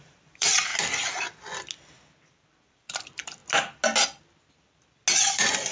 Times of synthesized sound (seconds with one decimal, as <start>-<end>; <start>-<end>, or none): 0.0-0.7; 2.3-3.4; 5.2-5.7